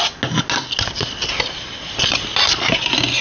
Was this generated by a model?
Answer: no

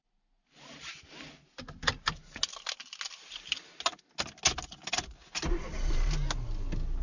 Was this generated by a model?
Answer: no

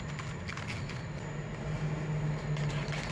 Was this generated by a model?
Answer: no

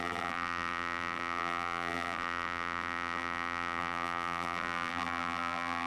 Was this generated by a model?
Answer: yes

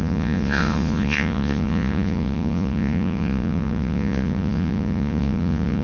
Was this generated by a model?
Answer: yes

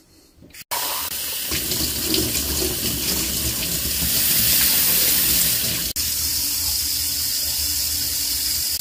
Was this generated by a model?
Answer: no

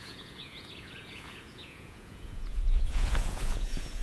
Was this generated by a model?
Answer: yes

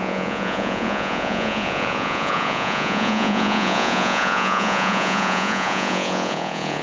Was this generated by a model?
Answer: yes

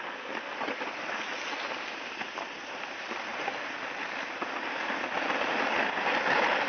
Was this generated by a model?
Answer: no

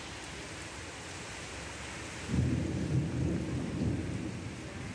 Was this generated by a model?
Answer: no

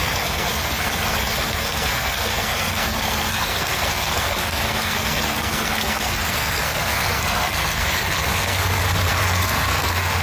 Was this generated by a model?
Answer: yes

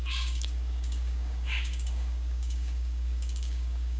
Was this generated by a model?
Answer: yes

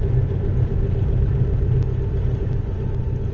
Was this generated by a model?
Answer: no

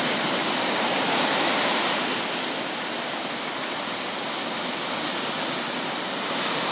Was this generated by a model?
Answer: no